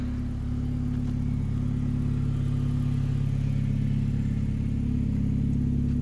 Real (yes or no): yes